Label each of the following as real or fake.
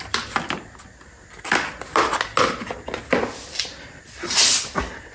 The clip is real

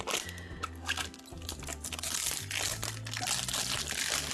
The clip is real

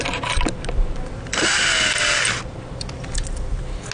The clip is real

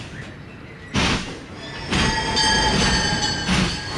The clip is real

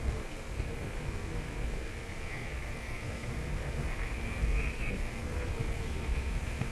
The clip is fake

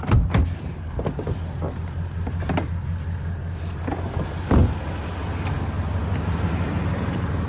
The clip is real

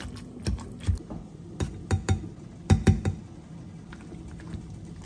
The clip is real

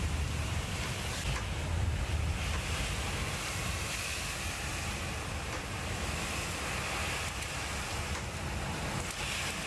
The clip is real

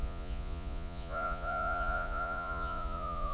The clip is fake